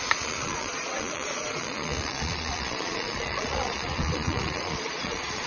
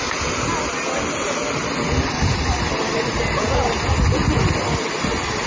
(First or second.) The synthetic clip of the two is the first